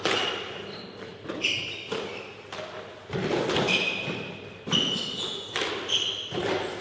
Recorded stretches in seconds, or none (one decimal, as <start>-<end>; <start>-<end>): 0.0-6.8